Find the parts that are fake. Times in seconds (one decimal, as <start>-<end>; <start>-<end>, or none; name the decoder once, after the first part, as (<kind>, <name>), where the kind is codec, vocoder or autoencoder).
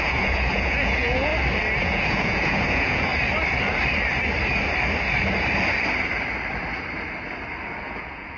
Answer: 0.0-1.3 (vocoder, Vocos); 1.8-3.1; 7.8-8.4